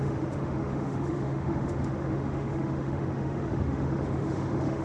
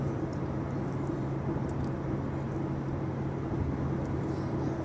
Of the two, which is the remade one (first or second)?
first